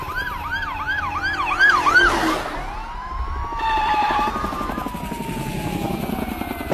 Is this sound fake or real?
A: real